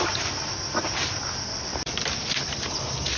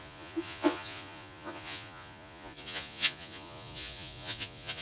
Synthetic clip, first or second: second